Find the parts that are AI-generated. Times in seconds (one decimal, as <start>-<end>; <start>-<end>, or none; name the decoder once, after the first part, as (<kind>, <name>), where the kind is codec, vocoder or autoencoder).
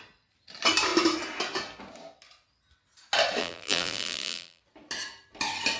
3.4-4.6 (vocoder, BigVGAN v2)